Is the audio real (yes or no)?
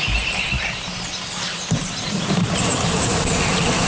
no